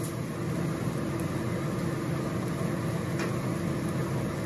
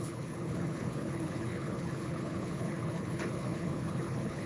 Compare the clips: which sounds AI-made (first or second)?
second